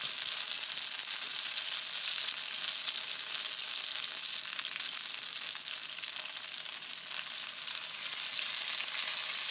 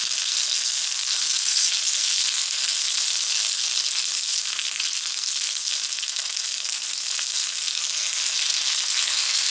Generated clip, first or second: second